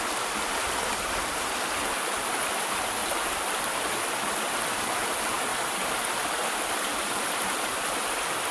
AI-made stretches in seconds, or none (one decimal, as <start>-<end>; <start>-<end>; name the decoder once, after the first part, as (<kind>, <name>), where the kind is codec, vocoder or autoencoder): none